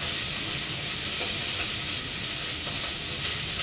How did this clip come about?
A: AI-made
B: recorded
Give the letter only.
B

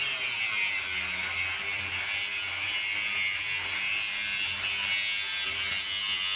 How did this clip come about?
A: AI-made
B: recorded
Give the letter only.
B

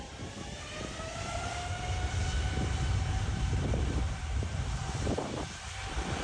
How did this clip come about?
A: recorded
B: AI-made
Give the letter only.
B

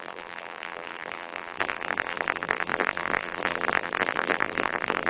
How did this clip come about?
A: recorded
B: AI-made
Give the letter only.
B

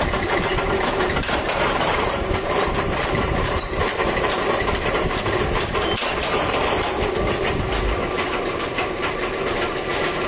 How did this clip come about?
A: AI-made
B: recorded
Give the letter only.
A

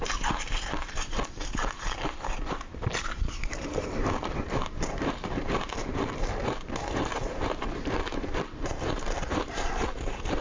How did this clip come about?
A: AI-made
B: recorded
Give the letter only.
A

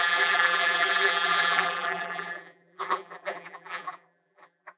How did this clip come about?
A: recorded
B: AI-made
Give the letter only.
B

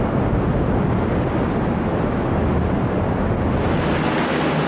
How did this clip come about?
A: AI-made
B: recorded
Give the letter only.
B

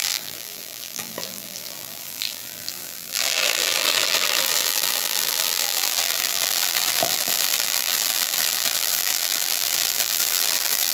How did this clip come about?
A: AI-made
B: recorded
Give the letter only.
A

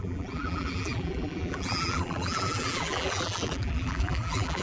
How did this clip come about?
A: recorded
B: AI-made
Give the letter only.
B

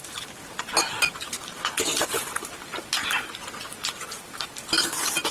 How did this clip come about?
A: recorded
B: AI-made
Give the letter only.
B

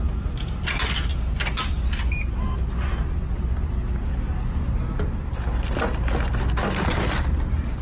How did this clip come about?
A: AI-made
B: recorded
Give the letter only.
B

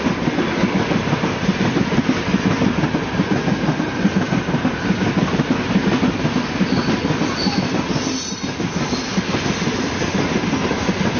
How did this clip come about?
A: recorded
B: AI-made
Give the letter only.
A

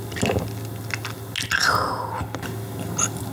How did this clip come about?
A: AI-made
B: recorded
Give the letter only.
B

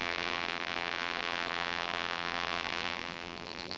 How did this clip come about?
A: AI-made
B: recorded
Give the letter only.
A